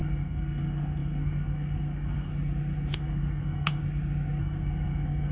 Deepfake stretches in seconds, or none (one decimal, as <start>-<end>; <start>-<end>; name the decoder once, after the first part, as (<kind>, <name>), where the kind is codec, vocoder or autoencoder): 0.0-2.3 (codec, SNAC); 2.9-3.8; 4.4-5.3